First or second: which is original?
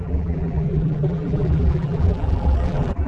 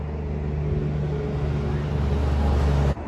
second